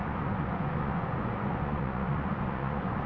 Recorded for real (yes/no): no